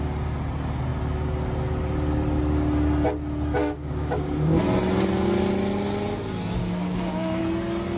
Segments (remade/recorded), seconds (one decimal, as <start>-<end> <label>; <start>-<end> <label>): 0.0-3.6 recorded; 3.6-4.6 remade; 4.6-6.6 recorded; 6.6-7.4 remade; 7.4-8.0 recorded

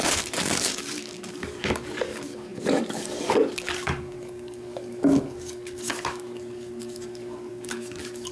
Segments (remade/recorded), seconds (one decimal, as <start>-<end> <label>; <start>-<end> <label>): 0.0-8.3 remade